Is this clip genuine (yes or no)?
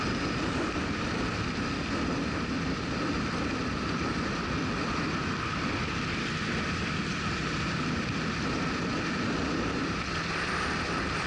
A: yes